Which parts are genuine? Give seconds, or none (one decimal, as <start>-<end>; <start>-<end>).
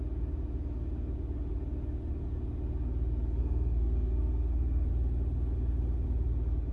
0.0-3.4; 4.9-6.7